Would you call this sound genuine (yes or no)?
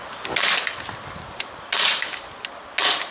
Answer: yes